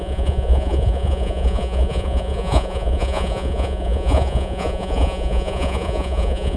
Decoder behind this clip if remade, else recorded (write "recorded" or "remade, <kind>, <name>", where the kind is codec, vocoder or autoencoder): remade, vocoder, Vocos